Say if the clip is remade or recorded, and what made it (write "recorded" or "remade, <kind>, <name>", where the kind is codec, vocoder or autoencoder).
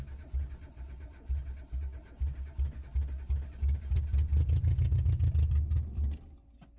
recorded